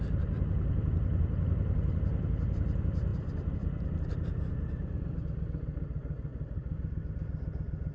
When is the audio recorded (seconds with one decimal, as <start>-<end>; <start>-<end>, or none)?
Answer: 0.0-7.9